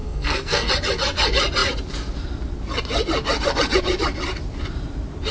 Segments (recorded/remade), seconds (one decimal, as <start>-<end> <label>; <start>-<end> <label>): 0.0-0.7 remade; 0.7-5.3 recorded